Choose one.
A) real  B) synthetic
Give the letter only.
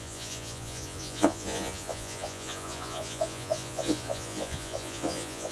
B